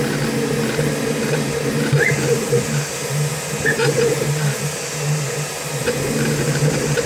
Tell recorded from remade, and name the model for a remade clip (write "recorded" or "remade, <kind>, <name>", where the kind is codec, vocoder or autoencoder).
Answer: recorded